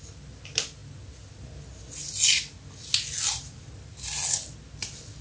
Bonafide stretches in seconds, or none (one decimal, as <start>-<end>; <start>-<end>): 0.0-5.2